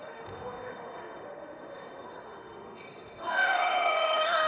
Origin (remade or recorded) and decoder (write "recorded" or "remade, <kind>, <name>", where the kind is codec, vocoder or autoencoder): remade, autoencoder, DAC-VAE